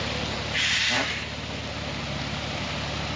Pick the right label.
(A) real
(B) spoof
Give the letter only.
A